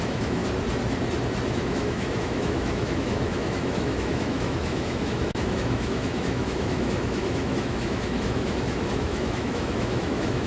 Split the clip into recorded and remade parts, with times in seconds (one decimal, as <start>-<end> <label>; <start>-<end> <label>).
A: 0.0-0.4 remade; 0.4-1.5 recorded; 1.5-10.5 remade